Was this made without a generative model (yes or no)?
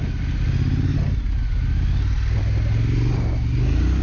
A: yes